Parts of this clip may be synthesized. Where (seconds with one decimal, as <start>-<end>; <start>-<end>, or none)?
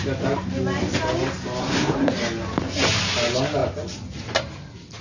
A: 1.6-2.1